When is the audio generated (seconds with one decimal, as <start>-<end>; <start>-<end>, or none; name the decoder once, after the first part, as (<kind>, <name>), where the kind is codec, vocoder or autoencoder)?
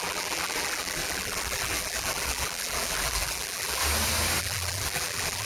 0.0-3.8 (vocoder, BigVGAN v2); 4.4-5.5